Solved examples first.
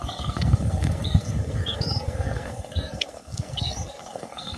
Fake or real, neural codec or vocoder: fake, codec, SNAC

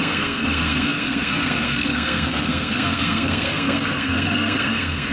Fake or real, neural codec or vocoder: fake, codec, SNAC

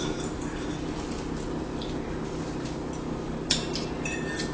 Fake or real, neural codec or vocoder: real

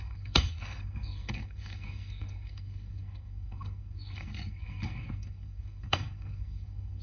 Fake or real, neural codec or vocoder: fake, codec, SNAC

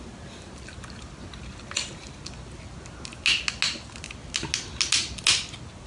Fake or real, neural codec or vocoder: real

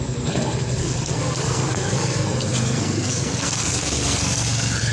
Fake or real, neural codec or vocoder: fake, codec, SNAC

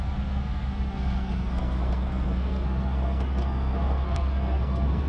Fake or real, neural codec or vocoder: fake, codec, SNAC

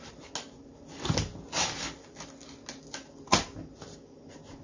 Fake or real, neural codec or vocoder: real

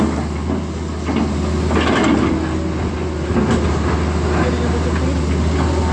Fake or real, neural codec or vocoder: real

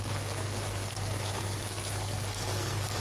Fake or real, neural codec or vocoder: fake, codec, SNAC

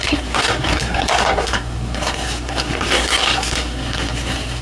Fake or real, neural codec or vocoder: fake, codec, SNAC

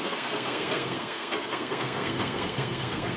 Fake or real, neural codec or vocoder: fake, codec, SNAC